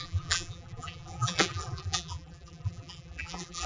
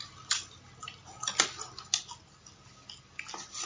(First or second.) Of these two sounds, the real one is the second